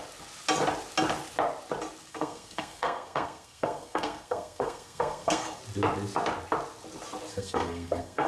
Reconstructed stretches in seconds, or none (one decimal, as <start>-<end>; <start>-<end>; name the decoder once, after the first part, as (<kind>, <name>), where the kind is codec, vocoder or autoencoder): 2.1-5.6 (codec, SNAC); 7.3-8.3